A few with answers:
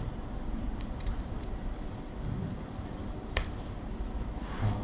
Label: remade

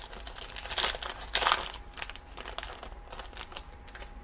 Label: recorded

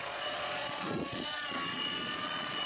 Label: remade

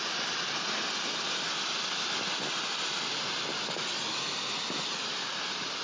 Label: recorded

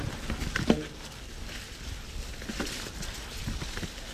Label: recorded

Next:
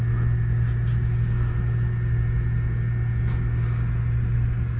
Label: recorded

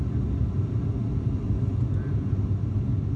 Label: recorded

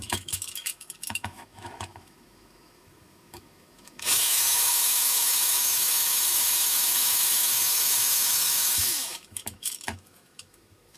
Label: remade